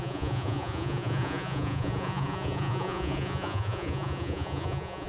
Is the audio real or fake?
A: fake